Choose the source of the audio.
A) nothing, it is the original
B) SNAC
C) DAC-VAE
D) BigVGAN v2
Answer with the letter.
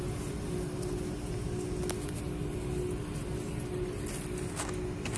A